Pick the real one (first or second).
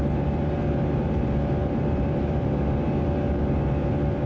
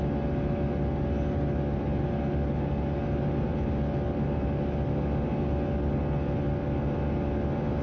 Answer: second